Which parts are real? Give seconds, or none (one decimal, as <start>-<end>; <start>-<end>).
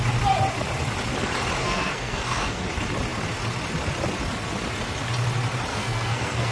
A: 0.0-1.6; 2.6-5.7